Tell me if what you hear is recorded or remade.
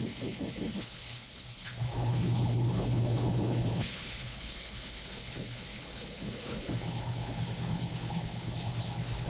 remade